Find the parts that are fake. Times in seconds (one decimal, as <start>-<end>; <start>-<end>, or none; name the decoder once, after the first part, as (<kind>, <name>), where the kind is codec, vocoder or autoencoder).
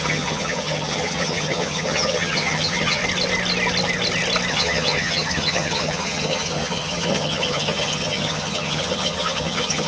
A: 0.0-3.0 (vocoder, HiFi-GAN); 4.5-9.9